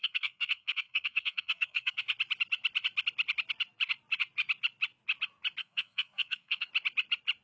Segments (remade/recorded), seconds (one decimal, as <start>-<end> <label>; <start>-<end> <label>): 0.0-2.0 remade; 2.0-5.6 recorded; 5.6-6.7 remade; 6.7-7.4 recorded